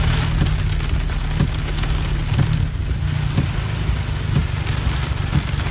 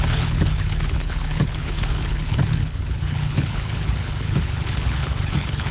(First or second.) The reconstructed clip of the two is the second